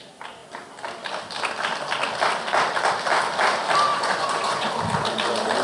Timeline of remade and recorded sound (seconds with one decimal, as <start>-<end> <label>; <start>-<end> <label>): 0.0-3.9 recorded; 3.9-4.7 remade; 4.7-5.6 recorded